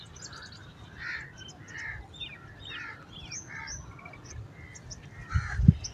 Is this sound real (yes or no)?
yes